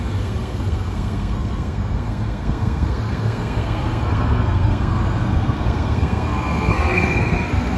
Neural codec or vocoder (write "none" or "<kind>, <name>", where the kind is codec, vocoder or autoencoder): codec, SNAC